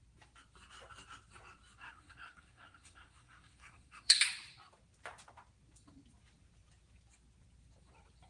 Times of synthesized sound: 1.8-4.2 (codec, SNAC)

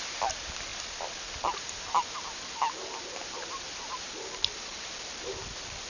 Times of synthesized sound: 0.0-5.9 (vocoder, BigVGAN v2)

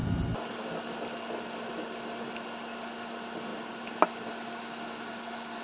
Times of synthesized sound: none

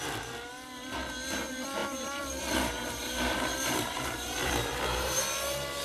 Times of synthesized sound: 1.8-5.2 (vocoder, BigVGAN v2)

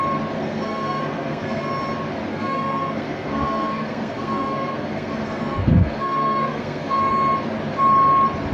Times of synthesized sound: 0.4-1.7 (codec, SNAC); 2.3-7.1